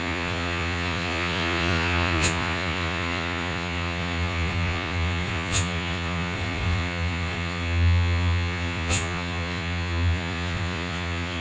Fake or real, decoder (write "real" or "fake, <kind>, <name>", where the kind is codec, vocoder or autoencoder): fake, vocoder, Vocos